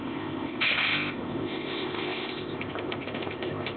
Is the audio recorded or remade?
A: remade